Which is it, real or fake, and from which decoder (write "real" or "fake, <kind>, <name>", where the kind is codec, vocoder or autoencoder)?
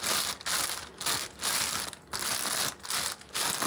real